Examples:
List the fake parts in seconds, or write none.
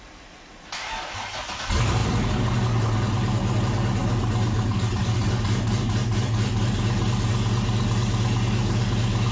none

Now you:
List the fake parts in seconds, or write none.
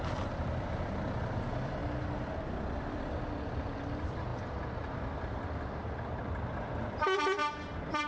4.3-6.2 (vocoder, BigVGAN v2); 7.4-8.1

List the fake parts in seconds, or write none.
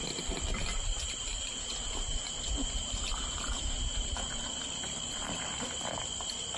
0.6-4.6 (vocoder, BigVGAN v2)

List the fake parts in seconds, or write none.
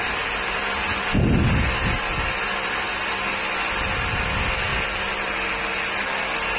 none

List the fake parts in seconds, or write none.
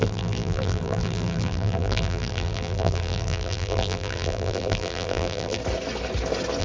0.0-5.6 (vocoder, BigVGAN v2)